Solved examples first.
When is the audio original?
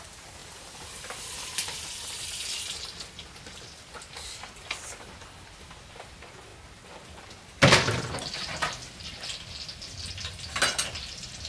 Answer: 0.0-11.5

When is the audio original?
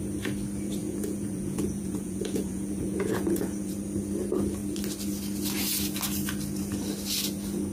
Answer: 0.0-0.8; 3.7-7.7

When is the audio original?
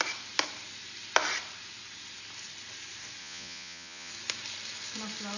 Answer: 0.0-3.2; 4.1-5.4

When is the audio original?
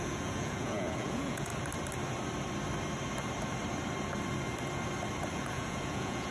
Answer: 1.5-5.3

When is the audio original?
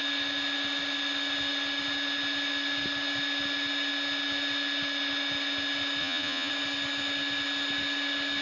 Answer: 0.0-6.0; 6.5-8.4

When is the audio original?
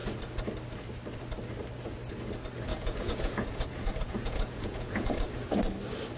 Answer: 0.0-2.7; 5.6-6.2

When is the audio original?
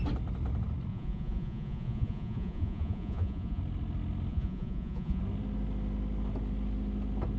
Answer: 0.0-0.9; 3.6-4.3; 5.2-7.4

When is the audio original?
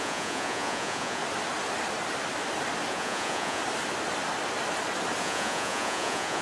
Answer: 1.2-2.9; 3.6-5.2